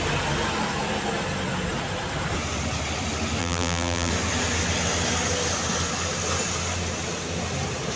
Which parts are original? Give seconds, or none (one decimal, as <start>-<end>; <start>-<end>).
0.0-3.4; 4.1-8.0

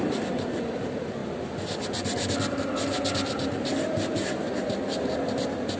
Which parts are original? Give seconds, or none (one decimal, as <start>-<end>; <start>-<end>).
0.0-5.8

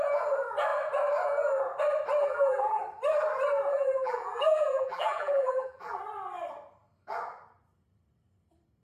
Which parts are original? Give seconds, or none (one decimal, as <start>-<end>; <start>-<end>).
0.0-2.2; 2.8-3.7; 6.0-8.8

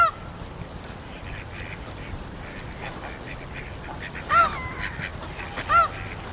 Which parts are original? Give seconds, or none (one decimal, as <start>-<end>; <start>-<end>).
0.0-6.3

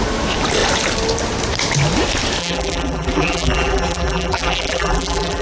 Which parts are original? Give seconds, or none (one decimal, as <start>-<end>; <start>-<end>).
0.0-2.4

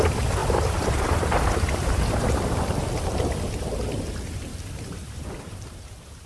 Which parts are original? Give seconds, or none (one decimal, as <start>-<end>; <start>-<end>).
0.0-0.4; 2.4-5.0